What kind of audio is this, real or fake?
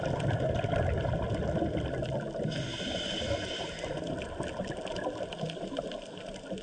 real